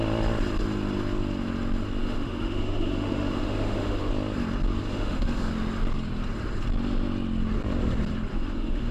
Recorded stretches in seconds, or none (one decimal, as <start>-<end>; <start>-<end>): 0.0-2.0; 4.1-4.9; 5.5-8.3